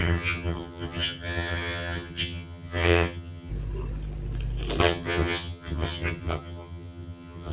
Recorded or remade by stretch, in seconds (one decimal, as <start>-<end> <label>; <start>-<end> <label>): 0.0-3.5 remade; 3.5-4.8 recorded; 4.8-7.5 remade